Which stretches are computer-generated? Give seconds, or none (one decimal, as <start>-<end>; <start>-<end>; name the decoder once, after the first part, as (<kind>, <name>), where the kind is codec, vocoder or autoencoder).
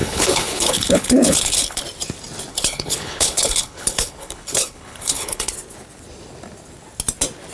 0.0-1.8 (codec, HILCodec); 2.5-5.5